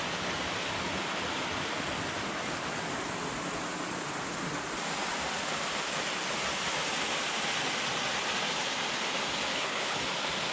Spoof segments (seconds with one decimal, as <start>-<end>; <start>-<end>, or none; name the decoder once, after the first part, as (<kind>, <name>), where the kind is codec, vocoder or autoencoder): 9.5-10.0 (codec, HILCodec)